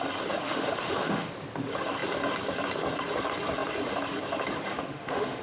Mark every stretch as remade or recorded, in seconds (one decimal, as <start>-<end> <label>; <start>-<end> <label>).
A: 0.0-0.4 recorded; 0.4-1.3 remade; 1.3-4.7 recorded; 4.7-5.4 remade

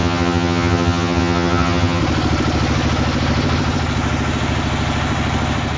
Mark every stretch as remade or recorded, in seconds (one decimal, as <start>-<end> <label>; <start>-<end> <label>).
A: 0.0-2.0 remade; 2.0-5.8 recorded

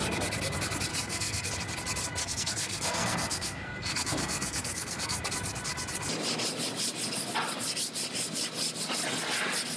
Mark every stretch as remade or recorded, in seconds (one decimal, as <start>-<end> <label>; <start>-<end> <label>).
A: 0.0-0.9 recorded; 0.9-1.5 remade; 1.5-2.2 recorded; 2.2-5.2 remade; 5.2-9.8 recorded

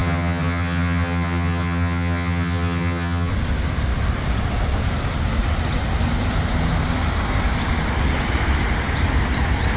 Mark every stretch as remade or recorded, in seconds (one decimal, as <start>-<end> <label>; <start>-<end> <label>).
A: 0.0-3.3 remade; 3.3-9.8 recorded

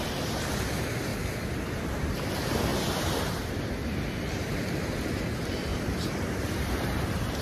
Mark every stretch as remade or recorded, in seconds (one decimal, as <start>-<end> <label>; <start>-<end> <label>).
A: 0.0-1.1 remade; 1.1-1.7 recorded; 1.7-2.7 remade; 2.7-4.2 recorded; 4.2-7.4 remade

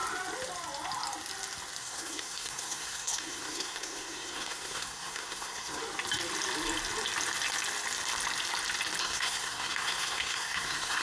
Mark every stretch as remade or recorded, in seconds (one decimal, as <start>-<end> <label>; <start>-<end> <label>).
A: 0.0-1.8 recorded; 1.8-5.8 remade; 5.8-9.0 recorded; 9.0-11.0 remade